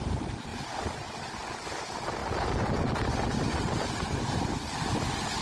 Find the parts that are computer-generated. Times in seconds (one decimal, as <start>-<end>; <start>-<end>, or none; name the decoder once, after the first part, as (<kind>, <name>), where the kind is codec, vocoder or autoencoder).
none